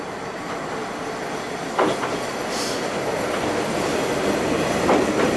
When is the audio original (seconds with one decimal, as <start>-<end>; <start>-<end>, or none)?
0.8-4.0